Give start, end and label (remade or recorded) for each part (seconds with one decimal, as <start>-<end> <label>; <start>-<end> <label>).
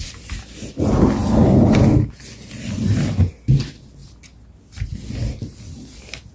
0.0-6.3 recorded